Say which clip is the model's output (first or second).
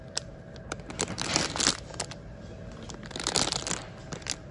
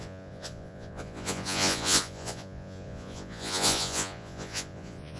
second